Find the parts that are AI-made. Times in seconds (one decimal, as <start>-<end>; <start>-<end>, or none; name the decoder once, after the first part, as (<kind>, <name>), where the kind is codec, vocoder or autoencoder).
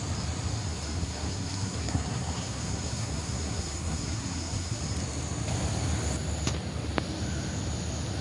0.6-4.8 (codec, SNAC)